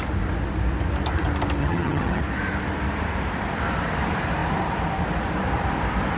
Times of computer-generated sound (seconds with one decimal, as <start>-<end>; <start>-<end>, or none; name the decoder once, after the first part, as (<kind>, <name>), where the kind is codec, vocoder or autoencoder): 1.6-2.2 (vocoder, HiFi-GAN)